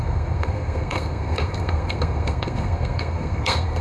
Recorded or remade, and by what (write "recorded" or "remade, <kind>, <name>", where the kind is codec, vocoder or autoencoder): remade, codec, SNAC